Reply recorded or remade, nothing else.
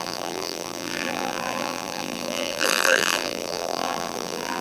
remade